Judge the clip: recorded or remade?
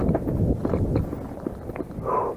recorded